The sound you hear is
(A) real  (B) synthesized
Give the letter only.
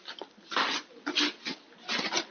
A